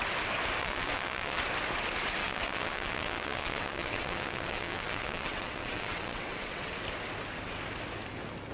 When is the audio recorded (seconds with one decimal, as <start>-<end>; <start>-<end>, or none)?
0.0-0.6; 1.4-2.2; 6.7-8.5